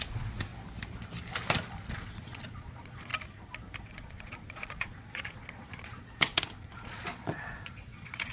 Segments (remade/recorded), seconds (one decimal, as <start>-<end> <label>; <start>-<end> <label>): 0.0-0.5 remade; 0.5-1.9 recorded; 1.9-3.1 remade; 3.1-3.9 recorded; 3.9-8.3 remade